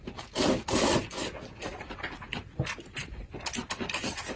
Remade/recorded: recorded